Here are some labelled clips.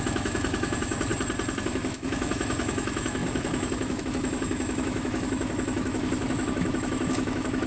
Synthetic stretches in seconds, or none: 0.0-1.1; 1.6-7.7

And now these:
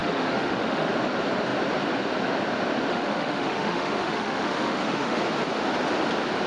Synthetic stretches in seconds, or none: 0.0-0.9; 2.9-5.2

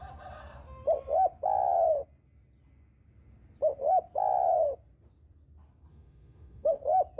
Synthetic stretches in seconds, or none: 5.9-6.8

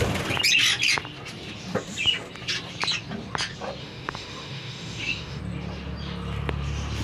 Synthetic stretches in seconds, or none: 3.8-5.4

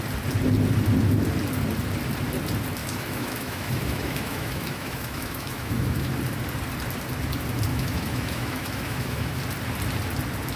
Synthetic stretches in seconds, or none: 2.8-6.1; 7.7-9.4

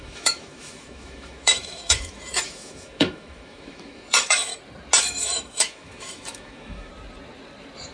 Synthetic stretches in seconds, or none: 0.0-4.5; 5.0-6.9

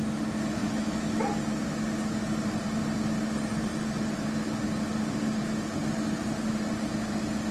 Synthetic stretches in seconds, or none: 0.6-1.2

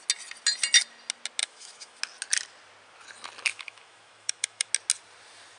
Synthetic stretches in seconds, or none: 1.4-2.0; 3.5-4.7